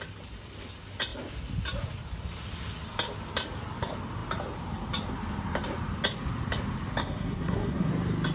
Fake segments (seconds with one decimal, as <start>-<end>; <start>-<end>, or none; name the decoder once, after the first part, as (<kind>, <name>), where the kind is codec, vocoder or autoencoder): 7.0-7.9 (codec, SNAC)